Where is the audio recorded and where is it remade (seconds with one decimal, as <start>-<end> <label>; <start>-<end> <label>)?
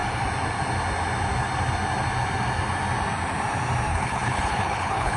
0.0-3.9 recorded; 3.9-5.2 remade